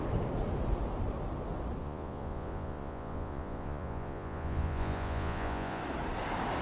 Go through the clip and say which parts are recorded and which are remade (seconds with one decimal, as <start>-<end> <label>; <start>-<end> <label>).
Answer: 0.0-1.8 recorded; 1.8-5.8 remade; 5.8-6.6 recorded